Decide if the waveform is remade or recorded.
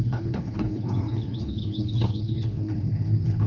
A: remade